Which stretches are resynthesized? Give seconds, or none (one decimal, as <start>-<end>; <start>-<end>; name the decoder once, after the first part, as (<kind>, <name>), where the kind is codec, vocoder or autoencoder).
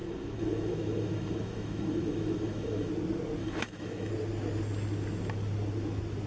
0.0-2.9 (autoencoder, DAC-VAE); 3.4-4.1